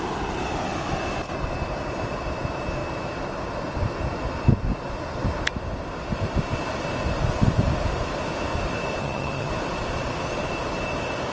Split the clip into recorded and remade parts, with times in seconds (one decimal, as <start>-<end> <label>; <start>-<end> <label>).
0.0-9.0 recorded; 9.0-9.5 remade; 9.5-11.3 recorded